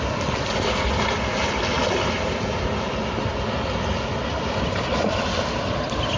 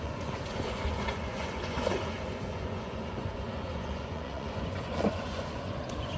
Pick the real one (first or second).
first